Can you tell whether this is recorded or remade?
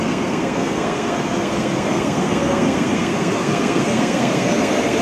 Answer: remade